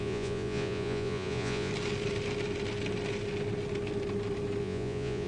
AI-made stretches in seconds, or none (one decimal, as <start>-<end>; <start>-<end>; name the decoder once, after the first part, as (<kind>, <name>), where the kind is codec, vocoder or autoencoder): 0.0-1.7 (vocoder, Vocos); 4.6-5.3

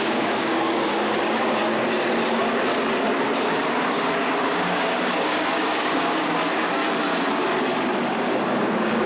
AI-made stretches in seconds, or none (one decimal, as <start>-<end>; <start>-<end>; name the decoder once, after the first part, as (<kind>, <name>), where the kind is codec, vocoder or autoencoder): 0.0-1.6 (codec, DAC); 2.3-2.7; 3.7-6.8; 8.0-9.1

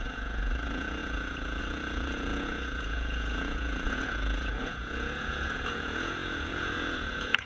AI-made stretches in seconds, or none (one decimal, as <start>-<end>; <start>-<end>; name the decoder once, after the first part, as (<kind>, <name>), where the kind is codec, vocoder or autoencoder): 0.0-7.5 (vocoder, Vocos)

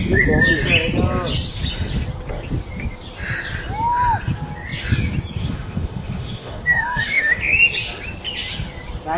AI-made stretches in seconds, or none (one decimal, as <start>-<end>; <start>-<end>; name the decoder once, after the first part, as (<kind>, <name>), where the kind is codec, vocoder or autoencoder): 5.4-7.4 (autoencoder, DAC-VAE)

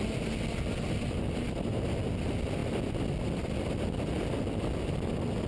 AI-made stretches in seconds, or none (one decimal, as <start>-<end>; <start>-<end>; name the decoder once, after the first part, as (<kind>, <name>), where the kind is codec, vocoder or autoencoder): none